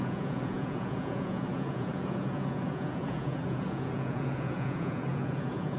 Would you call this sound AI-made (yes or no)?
yes